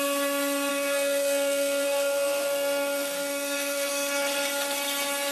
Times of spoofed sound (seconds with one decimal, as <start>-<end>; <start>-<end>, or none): 0.7-3.9